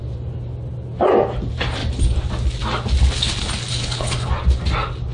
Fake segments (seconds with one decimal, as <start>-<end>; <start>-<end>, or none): 3.7-4.3